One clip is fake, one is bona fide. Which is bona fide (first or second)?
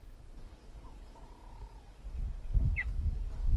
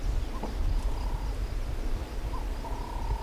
second